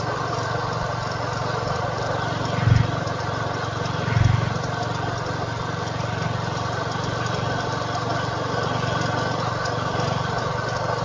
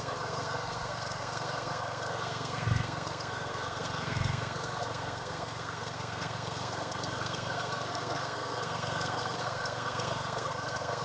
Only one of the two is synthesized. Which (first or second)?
second